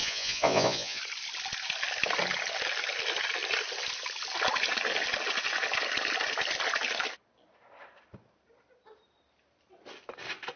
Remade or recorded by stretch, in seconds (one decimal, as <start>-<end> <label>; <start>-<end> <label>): 0.0-1.0 remade; 1.0-10.6 recorded